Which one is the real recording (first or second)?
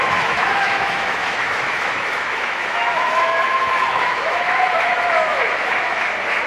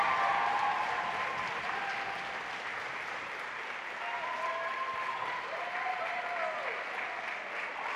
second